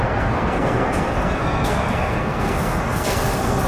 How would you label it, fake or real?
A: fake